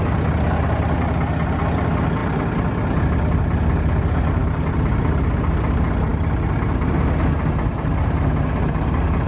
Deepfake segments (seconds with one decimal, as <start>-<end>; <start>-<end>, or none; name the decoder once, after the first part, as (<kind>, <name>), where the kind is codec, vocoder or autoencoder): 4.4-5.2 (vocoder, BigVGAN v2)